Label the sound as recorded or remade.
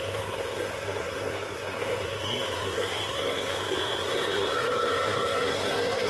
remade